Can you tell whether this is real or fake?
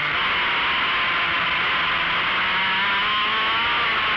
real